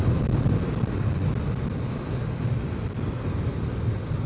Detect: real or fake real